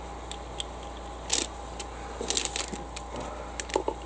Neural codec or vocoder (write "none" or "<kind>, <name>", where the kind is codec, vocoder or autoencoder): none